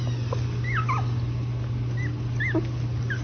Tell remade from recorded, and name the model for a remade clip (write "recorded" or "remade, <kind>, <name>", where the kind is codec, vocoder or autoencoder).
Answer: recorded